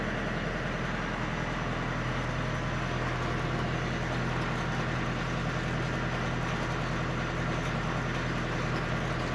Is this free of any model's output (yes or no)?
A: yes